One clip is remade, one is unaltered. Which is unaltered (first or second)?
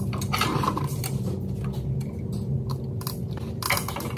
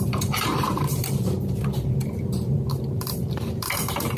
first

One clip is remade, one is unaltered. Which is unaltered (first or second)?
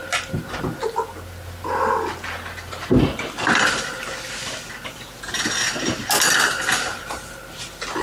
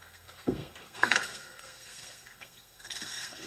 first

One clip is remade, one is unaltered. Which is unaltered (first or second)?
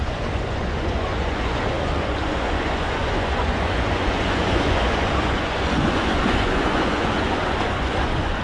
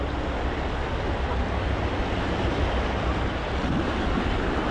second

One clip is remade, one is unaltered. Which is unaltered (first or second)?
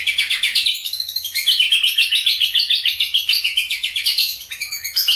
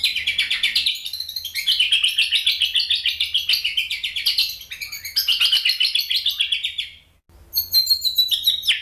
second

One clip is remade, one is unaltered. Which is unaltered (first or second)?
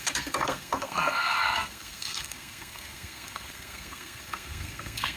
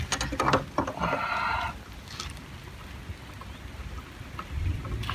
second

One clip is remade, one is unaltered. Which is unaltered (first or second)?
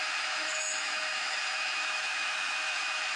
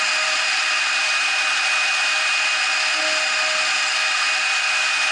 second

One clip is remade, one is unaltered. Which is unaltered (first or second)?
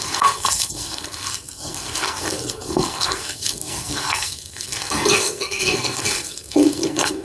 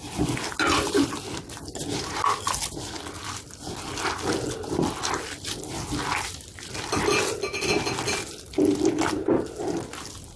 second